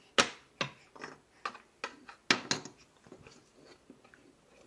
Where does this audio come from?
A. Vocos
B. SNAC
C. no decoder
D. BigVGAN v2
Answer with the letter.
C